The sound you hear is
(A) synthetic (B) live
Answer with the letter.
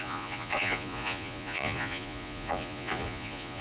A